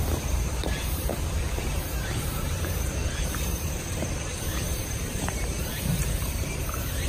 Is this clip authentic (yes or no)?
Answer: no